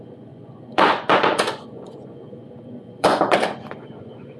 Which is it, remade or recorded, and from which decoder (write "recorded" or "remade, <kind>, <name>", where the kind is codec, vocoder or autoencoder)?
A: remade, vocoder, Vocos